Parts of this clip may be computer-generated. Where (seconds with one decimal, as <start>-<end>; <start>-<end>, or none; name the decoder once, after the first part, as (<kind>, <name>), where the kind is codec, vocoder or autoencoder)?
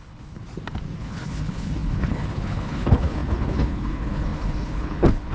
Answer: 0.0-0.4 (codec, HILCodec); 1.0-5.3